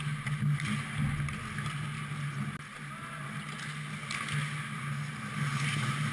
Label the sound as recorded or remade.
recorded